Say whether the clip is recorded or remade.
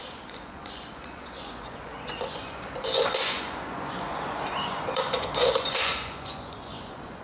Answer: remade